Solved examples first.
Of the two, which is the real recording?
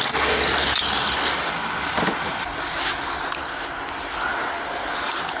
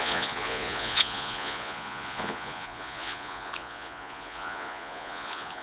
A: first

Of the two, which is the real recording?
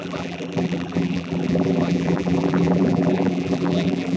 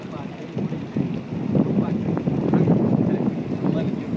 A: second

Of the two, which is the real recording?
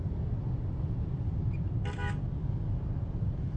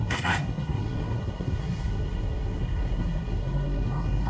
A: first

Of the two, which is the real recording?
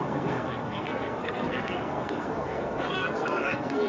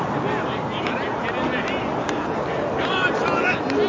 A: second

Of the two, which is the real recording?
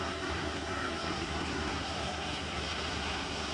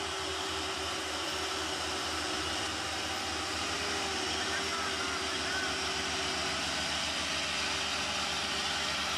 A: second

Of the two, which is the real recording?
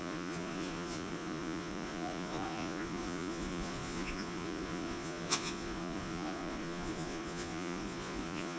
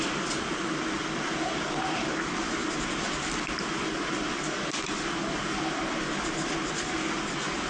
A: second